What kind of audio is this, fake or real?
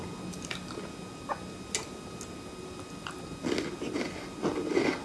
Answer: real